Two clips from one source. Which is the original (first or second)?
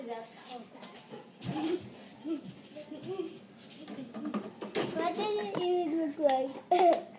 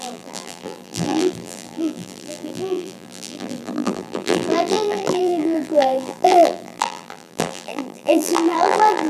first